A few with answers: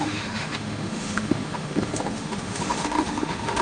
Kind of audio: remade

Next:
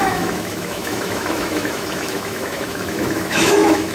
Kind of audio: remade